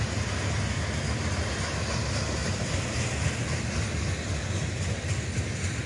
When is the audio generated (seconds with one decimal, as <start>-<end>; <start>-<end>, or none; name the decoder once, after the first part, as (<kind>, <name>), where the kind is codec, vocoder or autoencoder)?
none